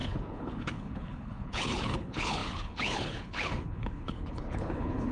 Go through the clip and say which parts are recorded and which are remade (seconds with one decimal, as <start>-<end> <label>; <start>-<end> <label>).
0.0-5.1 remade